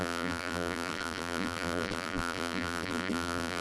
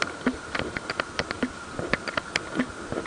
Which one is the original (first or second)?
second